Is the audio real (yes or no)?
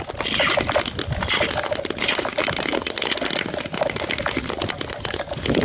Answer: yes